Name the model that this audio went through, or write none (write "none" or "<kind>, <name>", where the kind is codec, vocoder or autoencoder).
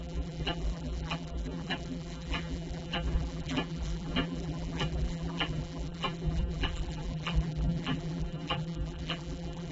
vocoder, BigVGAN v2